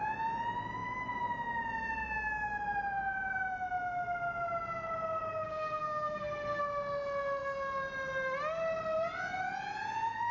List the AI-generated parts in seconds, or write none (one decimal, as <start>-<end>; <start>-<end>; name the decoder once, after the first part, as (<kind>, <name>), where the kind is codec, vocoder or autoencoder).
5.3-6.6 (codec, SNAC)